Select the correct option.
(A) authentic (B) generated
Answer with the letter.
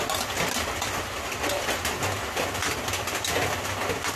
A